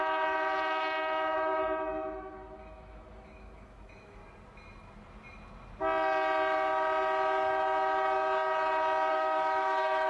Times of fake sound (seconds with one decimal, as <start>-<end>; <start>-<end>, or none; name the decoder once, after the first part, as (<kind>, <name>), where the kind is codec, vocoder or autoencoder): 0.0-4.2 (autoencoder, DAC-VAE); 9.1-10.1

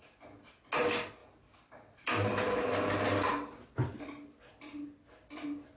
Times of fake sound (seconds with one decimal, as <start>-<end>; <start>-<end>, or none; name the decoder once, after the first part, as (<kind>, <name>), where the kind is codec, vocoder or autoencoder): none

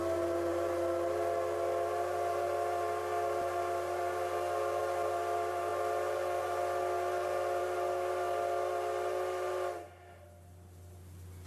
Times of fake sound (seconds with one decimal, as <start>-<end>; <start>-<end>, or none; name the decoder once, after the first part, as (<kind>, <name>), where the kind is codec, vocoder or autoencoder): none

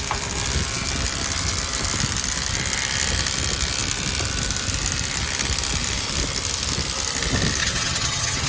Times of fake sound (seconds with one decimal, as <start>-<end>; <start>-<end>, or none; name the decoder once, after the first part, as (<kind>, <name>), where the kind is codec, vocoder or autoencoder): 7.6-8.5 (vocoder, HiFi-GAN)

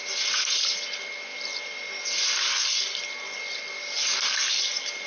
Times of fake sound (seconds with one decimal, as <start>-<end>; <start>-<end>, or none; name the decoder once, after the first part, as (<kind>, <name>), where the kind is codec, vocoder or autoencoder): none